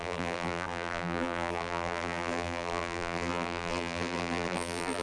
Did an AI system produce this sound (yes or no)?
yes